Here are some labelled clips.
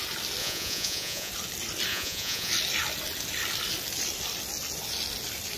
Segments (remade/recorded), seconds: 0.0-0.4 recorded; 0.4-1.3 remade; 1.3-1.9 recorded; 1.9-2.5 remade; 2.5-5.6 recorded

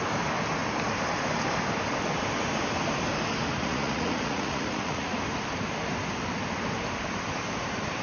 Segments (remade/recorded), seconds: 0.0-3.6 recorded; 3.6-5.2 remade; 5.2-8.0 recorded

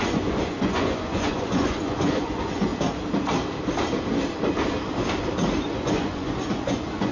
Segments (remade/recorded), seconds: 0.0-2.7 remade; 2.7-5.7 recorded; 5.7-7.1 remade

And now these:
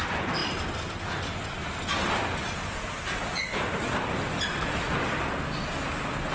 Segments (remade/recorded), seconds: 0.0-6.3 recorded

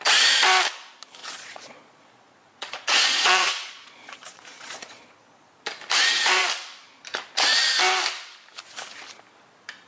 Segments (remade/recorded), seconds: 0.0-1.2 recorded; 1.2-5.6 remade; 5.6-9.9 recorded

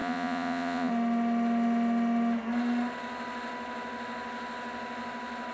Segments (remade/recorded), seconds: 0.0-0.9 remade; 0.9-5.5 recorded